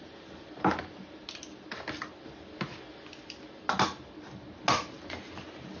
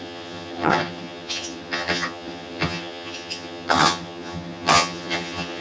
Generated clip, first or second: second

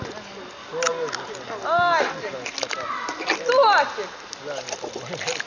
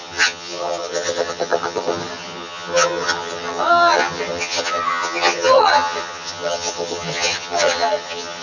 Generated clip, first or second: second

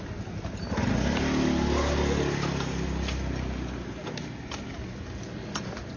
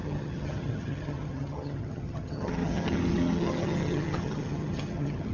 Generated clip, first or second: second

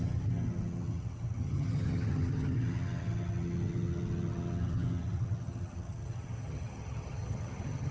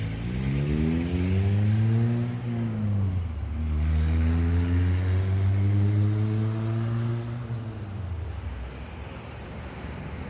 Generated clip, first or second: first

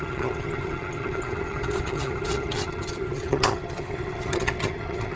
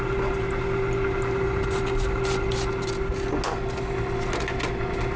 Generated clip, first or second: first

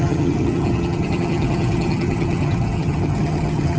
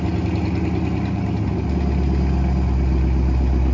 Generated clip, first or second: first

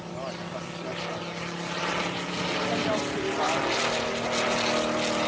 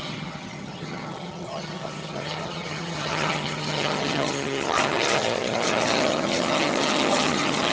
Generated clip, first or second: second